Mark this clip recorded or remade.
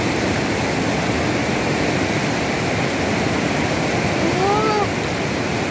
recorded